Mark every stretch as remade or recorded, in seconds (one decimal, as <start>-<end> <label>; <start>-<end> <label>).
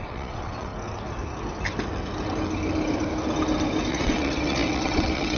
0.0-0.7 remade; 0.7-3.9 recorded; 3.9-5.4 remade